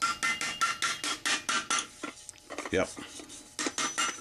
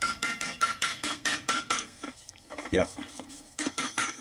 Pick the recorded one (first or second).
first